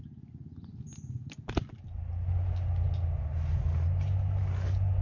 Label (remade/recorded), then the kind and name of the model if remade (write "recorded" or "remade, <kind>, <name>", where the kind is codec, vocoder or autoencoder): recorded